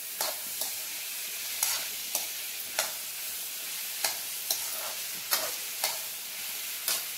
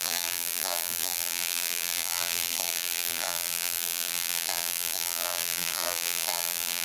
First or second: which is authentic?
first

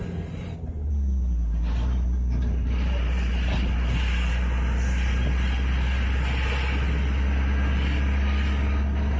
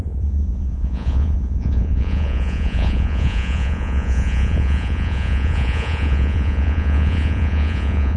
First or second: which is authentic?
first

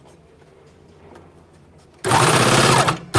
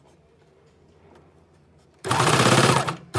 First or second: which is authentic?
first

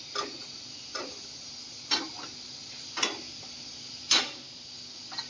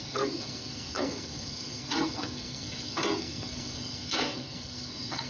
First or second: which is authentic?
first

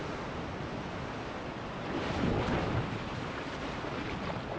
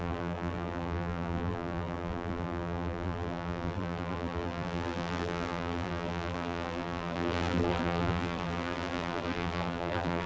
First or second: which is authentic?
first